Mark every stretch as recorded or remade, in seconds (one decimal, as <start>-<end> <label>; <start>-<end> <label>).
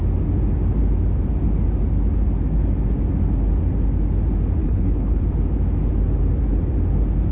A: 0.0-4.6 recorded; 4.6-5.2 remade; 5.2-7.3 recorded